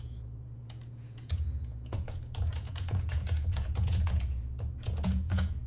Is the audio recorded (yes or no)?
no